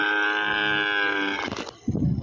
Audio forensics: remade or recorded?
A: recorded